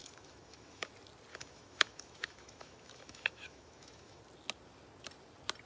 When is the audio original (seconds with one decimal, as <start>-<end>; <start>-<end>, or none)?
0.9-1.3; 4.2-5.7